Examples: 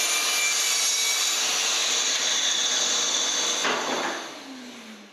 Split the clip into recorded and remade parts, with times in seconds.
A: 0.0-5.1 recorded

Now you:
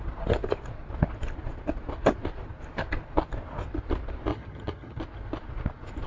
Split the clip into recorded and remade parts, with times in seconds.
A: 0.0-4.3 recorded; 4.3-5.0 remade; 5.0-6.1 recorded

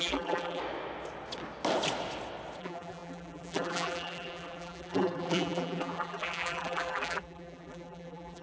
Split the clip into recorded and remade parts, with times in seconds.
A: 0.0-0.6 remade; 0.6-2.6 recorded; 2.6-8.4 remade

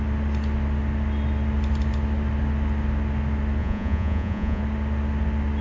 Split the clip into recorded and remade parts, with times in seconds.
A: 0.0-3.6 recorded; 3.6-4.6 remade; 4.6-5.6 recorded

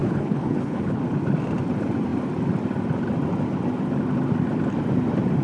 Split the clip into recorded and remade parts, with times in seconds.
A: 0.0-1.0 remade; 1.0-5.4 recorded

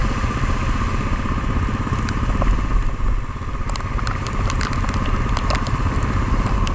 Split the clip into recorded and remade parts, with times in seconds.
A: 0.0-6.7 recorded

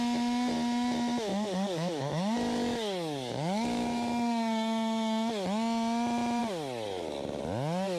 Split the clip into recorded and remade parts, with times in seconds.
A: 0.0-1.3 recorded; 1.3-5.3 remade; 5.3-8.0 recorded

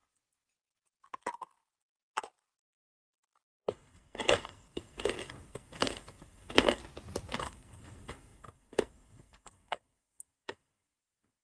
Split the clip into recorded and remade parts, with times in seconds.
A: 0.0-3.5 recorded; 3.5-6.8 remade; 6.8-7.4 recorded; 7.4-11.4 remade